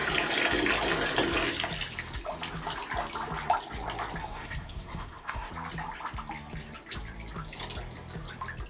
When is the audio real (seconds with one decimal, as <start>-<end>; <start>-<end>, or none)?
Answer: 0.0-4.2; 5.5-8.7